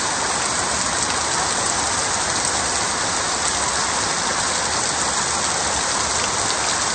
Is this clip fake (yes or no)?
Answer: no